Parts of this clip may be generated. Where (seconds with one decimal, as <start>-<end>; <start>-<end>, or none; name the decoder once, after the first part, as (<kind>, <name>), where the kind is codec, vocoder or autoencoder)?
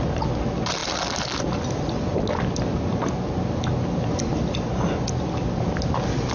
none